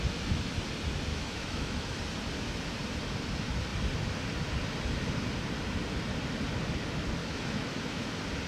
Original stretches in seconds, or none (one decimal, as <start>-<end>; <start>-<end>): 0.0-1.1; 2.0-7.2; 8.1-8.5